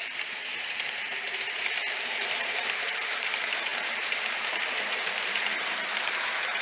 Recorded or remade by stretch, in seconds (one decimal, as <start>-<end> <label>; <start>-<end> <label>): 0.0-6.6 remade